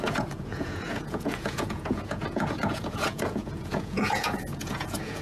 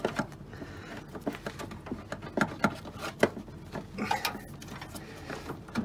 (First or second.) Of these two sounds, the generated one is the first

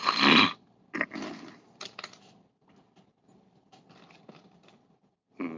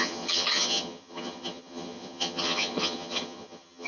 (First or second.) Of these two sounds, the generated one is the second